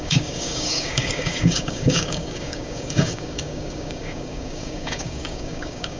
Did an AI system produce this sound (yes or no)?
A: yes